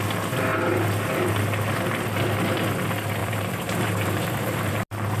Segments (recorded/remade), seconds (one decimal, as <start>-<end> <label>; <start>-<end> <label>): 0.0-3.2 recorded; 3.2-4.7 remade; 4.7-5.2 recorded

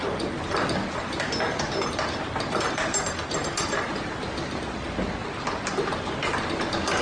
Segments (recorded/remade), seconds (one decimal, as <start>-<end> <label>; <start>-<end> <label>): 0.0-5.2 remade; 5.2-7.0 recorded

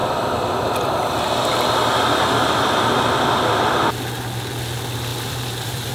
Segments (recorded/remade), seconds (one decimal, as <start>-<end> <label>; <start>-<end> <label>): 0.0-2.8 remade; 2.8-5.1 recorded; 5.1-5.9 remade

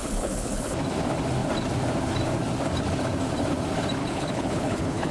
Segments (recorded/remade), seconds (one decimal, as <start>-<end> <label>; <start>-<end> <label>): 0.0-0.7 remade; 0.7-4.0 recorded; 4.0-5.1 remade